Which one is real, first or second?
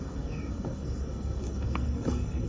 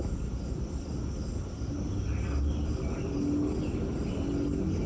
second